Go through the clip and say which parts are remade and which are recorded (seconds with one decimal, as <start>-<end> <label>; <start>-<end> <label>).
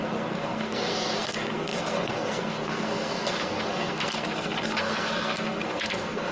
0.0-6.3 remade